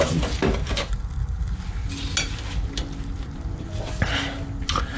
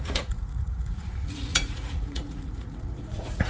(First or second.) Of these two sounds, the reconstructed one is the second